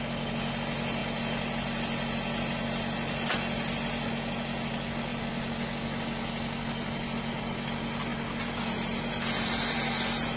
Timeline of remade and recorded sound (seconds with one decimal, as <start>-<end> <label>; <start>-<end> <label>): 0.0-10.4 recorded